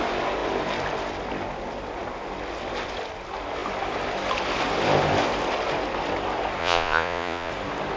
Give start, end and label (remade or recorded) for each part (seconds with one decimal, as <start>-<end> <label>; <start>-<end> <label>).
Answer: 0.0-6.6 recorded; 6.6-7.5 remade; 7.5-8.0 recorded